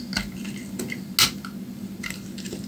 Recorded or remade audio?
recorded